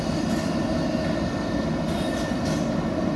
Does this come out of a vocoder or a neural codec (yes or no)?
no